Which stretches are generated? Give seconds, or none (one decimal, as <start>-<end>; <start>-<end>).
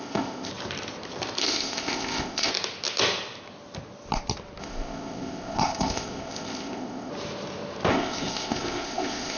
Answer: 0.0-0.5; 1.4-2.5; 4.6-7.1; 7.9-9.4